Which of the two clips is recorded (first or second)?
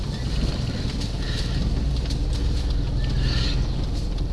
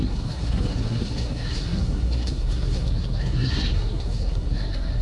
first